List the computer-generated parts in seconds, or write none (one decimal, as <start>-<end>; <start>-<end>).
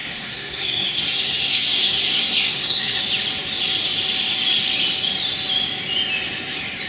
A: 0.0-3.0